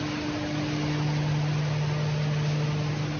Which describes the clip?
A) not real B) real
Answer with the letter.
B